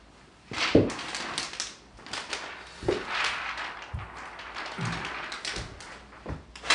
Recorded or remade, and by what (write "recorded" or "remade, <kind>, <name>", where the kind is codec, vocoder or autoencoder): recorded